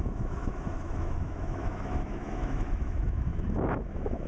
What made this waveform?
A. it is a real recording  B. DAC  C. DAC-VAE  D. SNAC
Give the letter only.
C